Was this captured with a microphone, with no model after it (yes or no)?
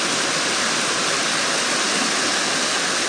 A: yes